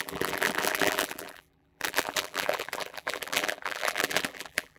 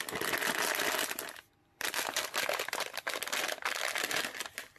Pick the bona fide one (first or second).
second